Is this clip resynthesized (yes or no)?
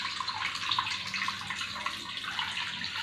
no